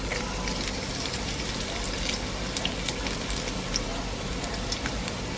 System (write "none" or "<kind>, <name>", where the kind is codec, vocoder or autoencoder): none